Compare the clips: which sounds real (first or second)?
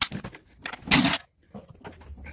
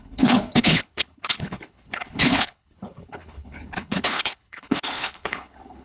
first